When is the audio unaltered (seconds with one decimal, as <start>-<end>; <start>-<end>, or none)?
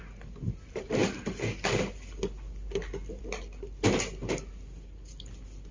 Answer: 0.0-5.7